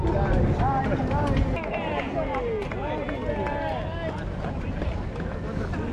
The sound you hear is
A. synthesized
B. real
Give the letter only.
B